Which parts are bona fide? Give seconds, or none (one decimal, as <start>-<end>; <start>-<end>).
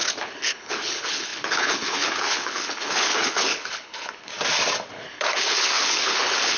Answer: 4.3-4.9